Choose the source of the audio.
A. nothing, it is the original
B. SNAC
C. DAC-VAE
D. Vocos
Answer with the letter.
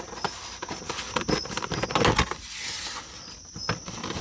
A